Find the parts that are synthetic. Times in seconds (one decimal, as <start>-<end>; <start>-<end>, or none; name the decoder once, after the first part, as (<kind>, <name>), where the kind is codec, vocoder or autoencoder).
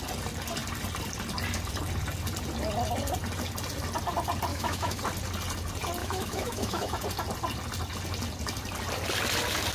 4.5-5.0 (autoencoder, DAC-VAE); 6.0-6.9